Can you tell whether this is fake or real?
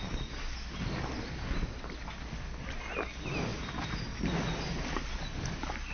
real